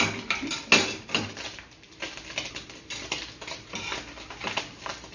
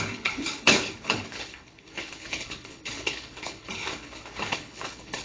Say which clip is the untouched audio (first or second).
first